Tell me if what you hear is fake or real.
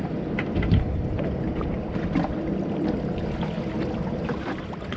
real